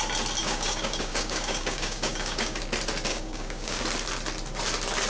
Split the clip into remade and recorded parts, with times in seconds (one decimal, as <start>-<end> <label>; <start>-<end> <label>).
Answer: 0.0-0.4 recorded; 0.4-2.6 remade; 2.6-3.1 recorded; 3.1-3.8 remade; 3.8-5.1 recorded

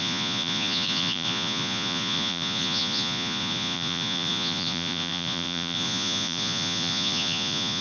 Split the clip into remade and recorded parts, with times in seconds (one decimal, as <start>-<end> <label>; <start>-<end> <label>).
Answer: 0.0-7.8 remade

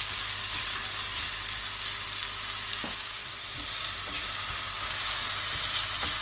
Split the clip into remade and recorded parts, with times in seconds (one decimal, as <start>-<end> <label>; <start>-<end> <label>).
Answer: 0.0-0.4 remade; 0.4-2.7 recorded; 2.7-3.2 remade; 3.2-6.2 recorded

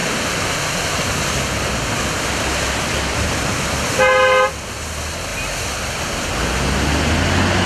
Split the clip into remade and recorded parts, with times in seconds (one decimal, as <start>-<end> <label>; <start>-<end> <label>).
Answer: 0.0-7.7 recorded